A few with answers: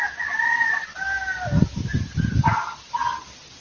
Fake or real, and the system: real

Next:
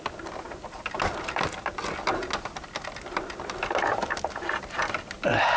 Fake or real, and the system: real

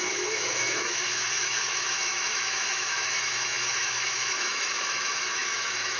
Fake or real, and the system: fake, autoencoder, DAC-VAE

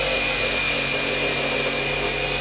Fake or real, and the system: real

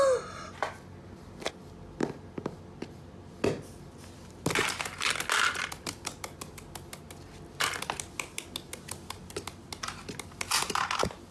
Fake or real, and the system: real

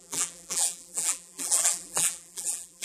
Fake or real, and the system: fake, vocoder, BigVGAN v2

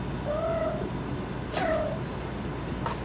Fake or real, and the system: real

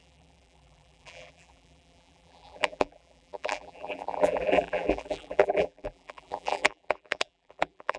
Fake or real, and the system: fake, vocoder, BigVGAN v2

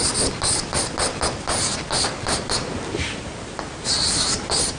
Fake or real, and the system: real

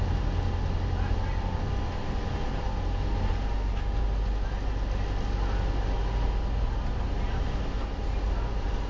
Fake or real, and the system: real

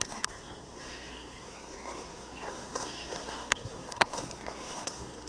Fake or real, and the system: fake, codec, SNAC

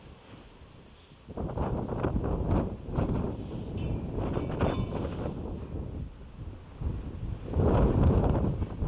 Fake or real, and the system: real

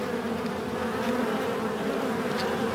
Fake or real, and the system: real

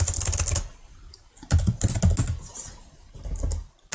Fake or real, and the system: real